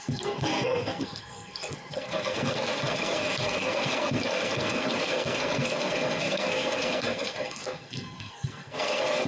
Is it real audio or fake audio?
fake